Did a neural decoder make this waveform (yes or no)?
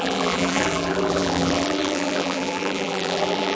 yes